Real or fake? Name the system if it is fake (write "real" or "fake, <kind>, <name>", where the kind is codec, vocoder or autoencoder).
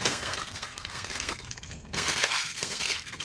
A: fake, codec, SNAC